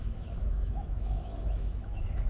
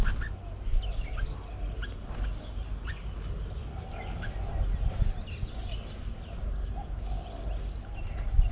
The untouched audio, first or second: second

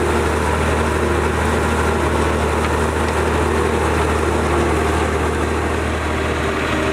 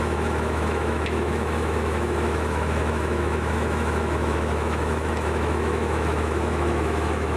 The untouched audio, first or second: first